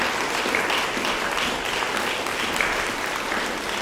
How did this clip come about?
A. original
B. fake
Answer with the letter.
A